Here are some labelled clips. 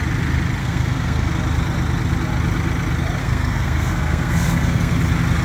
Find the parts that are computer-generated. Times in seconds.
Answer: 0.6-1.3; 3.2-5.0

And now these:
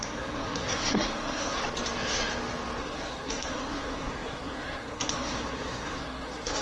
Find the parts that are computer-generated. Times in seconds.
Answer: 0.0-1.6; 2.8-6.6

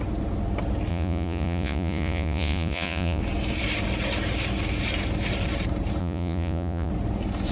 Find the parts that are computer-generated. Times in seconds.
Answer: 0.9-3.2; 6.0-6.9

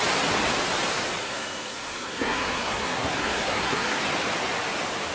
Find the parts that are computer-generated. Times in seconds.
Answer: 1.2-4.0

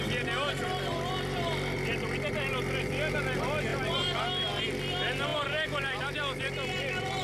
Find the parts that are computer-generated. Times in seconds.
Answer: 5.3-6.0